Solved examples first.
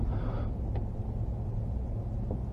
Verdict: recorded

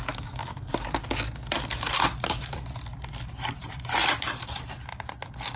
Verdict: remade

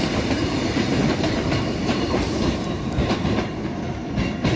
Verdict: remade